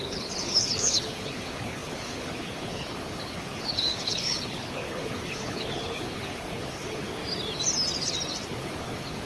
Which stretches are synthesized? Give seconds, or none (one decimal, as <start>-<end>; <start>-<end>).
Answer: 0.0-7.2; 8.5-9.3